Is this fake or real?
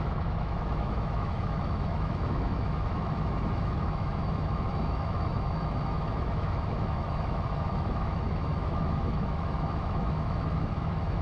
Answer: fake